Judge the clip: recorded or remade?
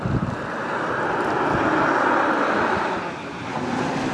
recorded